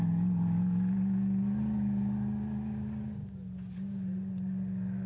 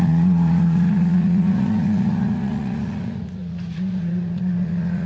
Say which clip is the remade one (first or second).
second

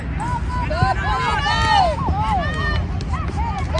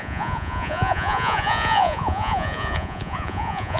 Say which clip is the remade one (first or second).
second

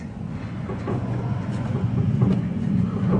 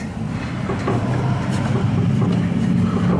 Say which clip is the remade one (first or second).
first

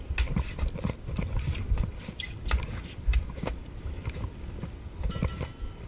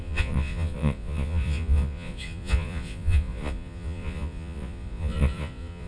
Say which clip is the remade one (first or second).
second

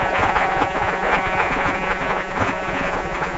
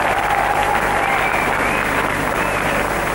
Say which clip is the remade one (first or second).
first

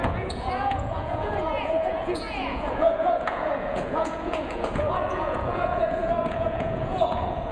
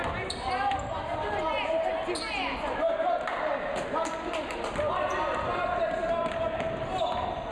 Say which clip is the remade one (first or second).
first